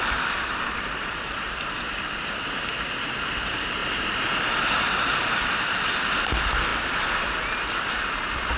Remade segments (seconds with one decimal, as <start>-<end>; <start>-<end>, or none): none